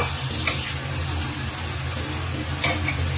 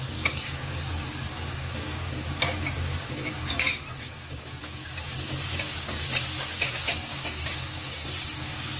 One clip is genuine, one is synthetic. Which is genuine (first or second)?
first